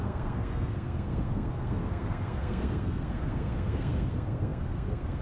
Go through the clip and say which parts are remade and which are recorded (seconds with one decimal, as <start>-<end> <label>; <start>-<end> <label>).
0.0-5.2 remade